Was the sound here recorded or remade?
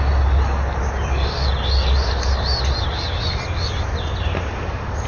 recorded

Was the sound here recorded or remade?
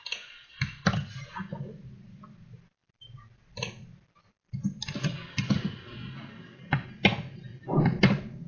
recorded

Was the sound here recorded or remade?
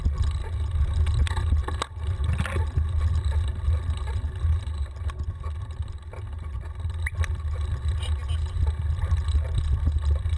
recorded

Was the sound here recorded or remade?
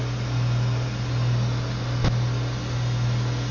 recorded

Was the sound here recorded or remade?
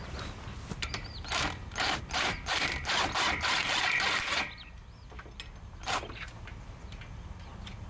recorded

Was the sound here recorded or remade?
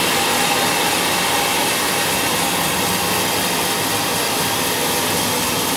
recorded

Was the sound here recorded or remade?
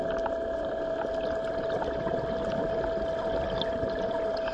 recorded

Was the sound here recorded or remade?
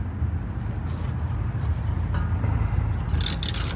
recorded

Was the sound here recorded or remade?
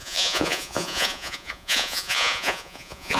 remade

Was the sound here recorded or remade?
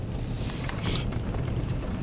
remade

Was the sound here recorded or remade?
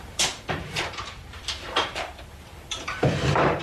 remade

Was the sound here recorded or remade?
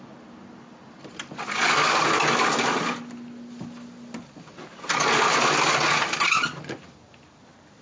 recorded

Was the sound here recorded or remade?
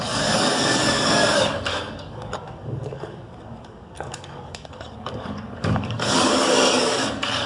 remade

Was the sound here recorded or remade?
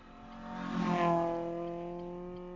recorded